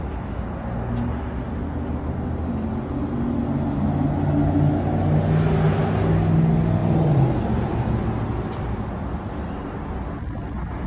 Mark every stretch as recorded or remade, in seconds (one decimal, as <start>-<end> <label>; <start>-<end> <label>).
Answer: 0.0-6.8 recorded; 6.8-9.4 remade; 9.4-10.9 recorded